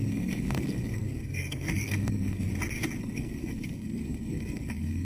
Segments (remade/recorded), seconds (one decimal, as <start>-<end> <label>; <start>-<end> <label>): 0.0-2.5 remade; 2.5-3.0 recorded; 3.0-5.0 remade